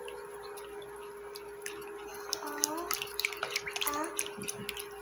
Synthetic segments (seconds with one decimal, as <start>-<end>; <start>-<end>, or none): none